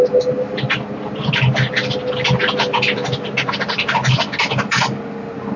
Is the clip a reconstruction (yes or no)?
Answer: no